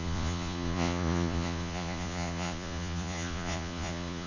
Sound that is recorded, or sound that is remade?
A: remade